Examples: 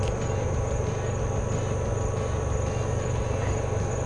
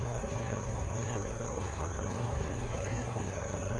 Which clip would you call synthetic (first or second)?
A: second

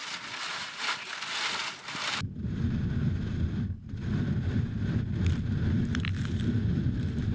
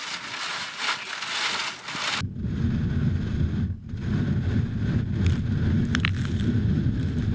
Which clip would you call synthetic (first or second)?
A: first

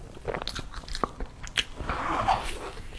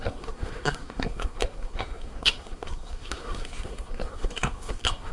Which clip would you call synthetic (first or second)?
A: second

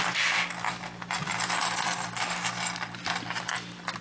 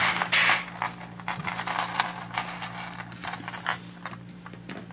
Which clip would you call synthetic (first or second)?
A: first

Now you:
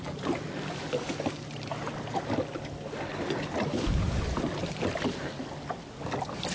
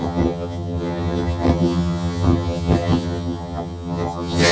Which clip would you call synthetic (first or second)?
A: second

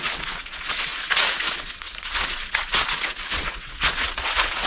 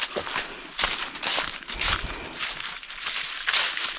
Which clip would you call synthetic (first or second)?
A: first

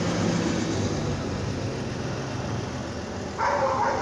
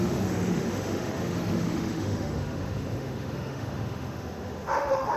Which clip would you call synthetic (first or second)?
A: second